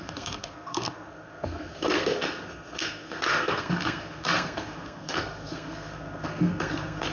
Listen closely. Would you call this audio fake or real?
fake